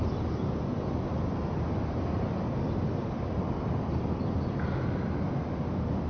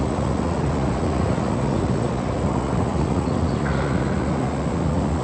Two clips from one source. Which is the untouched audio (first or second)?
first